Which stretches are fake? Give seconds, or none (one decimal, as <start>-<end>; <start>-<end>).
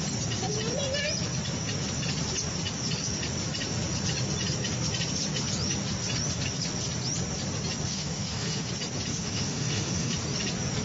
7.9-8.7; 9.2-10.1